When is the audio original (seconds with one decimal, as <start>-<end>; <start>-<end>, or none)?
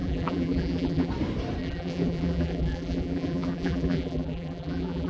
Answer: 1.1-1.6